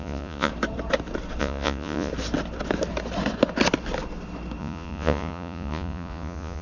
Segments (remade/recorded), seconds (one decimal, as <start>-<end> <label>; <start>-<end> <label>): 0.0-0.5 remade; 0.5-1.4 recorded; 1.4-2.1 remade; 2.1-4.6 recorded; 4.6-6.6 remade